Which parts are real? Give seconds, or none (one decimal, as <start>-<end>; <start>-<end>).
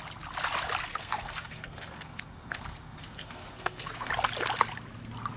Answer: 0.0-0.9; 4.1-5.4